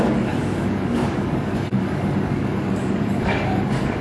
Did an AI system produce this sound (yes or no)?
yes